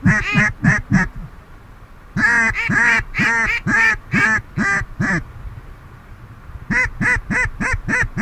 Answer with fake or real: real